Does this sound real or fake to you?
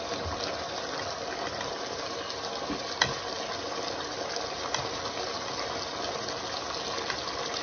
real